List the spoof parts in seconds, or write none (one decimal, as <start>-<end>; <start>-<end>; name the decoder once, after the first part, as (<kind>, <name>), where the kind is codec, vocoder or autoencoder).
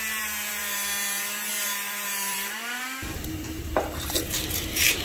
0.0-5.0 (vocoder, BigVGAN v2)